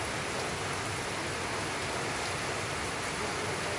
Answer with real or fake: real